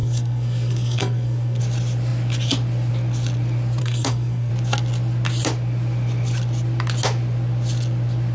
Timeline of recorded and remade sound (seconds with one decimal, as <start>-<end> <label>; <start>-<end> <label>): 0.0-1.6 remade; 1.6-3.8 recorded; 3.8-4.5 remade; 4.5-8.3 recorded